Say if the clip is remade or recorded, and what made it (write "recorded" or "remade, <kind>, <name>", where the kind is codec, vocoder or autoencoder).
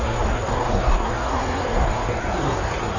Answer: remade, codec, SNAC